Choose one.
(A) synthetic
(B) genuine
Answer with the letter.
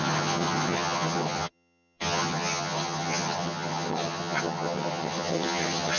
A